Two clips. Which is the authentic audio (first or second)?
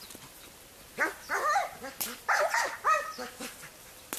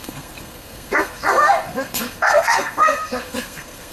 first